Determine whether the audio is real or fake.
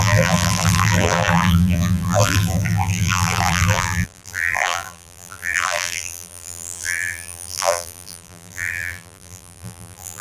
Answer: fake